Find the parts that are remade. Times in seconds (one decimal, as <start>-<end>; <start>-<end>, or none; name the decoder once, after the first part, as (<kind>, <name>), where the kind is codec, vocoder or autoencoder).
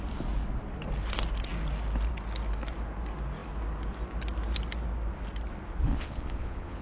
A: 5.9-6.8 (vocoder, Vocos)